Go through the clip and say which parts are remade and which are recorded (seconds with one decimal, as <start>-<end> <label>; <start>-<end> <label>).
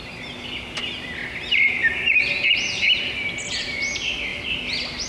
0.0-5.1 recorded